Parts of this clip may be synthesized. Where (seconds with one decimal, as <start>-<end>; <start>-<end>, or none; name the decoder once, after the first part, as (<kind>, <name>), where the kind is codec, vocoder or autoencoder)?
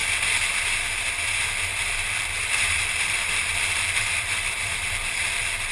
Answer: 1.7-5.1 (vocoder, BigVGAN v2)